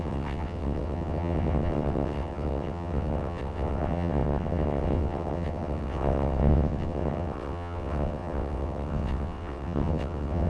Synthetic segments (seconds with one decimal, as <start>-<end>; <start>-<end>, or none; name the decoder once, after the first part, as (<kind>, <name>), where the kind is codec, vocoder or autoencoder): 0.0-10.5 (vocoder, WaveNeXt)